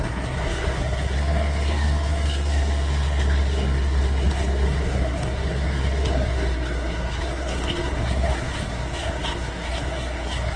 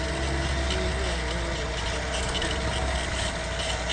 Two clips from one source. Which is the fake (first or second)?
first